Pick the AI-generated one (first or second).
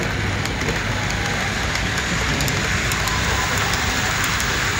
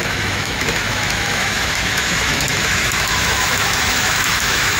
second